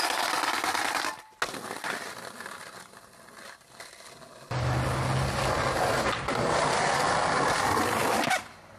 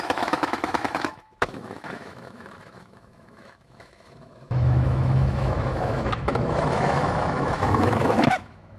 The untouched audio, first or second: first